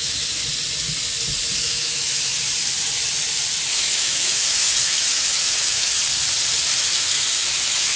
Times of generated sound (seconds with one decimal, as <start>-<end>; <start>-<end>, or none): 0.0-0.4; 1.6-2.3; 3.7-6.0; 6.8-8.0